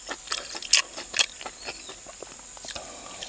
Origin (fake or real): real